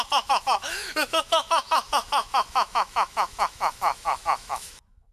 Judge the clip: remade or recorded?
remade